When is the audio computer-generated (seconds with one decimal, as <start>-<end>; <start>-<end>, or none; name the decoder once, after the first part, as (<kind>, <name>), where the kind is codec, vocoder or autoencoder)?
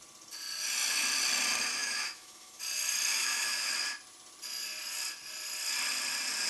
1.8-2.6 (autoencoder, DAC-VAE); 3.1-3.7